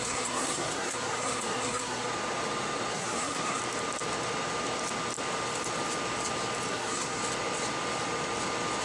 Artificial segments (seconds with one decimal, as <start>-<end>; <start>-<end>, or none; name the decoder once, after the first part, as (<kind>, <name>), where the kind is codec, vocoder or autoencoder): 0.0-2.1 (codec, SNAC); 2.9-3.6; 6.7-7.2